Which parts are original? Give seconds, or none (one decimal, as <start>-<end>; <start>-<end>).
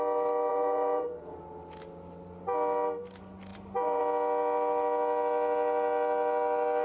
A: 0.0-0.5; 1.4-3.5; 4.0-6.8